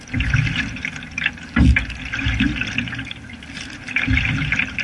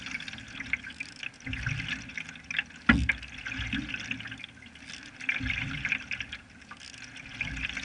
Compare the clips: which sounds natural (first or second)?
second